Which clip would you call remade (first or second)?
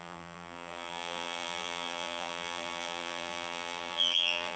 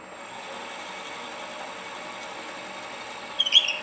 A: first